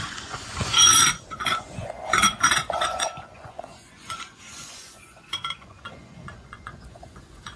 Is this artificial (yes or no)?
yes